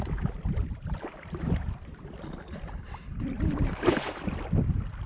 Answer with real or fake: fake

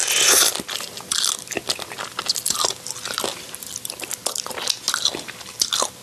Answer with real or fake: real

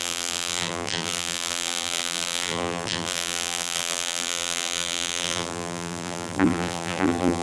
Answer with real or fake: fake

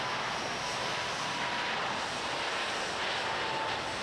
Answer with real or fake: real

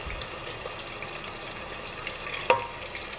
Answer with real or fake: real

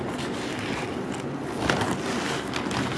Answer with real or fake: real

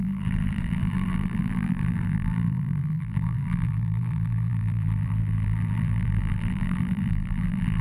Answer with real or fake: fake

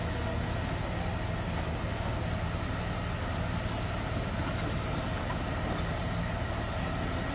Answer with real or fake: real